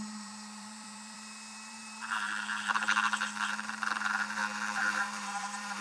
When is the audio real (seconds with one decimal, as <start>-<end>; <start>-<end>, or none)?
none

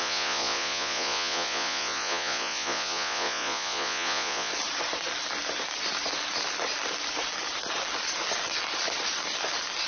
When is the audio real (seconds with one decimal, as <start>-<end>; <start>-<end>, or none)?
4.5-9.9

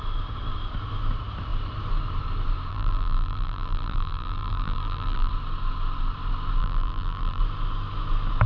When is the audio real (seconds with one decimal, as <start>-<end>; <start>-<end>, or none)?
0.0-2.7; 5.3-6.6; 7.4-8.5

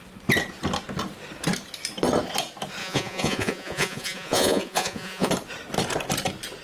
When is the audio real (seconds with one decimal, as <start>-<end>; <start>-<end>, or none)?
0.0-2.8; 5.3-6.6

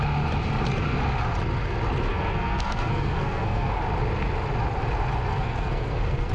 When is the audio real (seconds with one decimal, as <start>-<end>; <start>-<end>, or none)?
0.0-2.1; 3.8-5.3

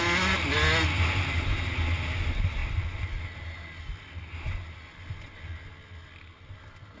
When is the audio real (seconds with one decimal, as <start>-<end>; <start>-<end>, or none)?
0.0-7.0

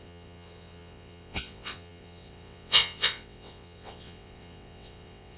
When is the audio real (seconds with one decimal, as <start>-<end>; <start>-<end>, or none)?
none

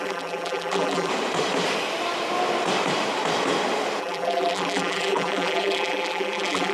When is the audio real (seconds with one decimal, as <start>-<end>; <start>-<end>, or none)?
1.1-4.0